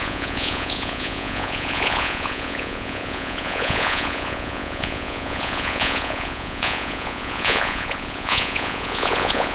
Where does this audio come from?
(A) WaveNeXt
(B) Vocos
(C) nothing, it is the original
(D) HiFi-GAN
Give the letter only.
B